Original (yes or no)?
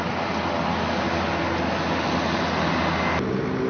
yes